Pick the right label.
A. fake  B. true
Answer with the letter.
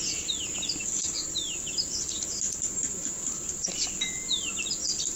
B